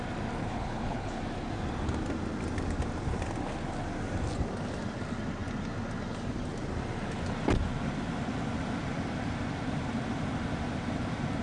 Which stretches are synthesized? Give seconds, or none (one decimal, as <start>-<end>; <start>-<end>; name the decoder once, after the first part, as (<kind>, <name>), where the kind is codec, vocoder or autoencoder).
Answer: 0.4-1.2 (codec, HILCodec)